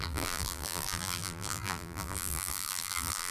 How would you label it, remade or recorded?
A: remade